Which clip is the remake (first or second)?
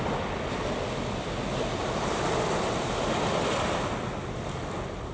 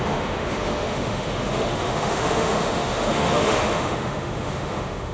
second